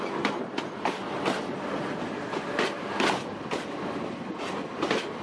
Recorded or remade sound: recorded